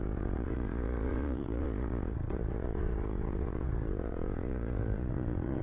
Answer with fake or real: fake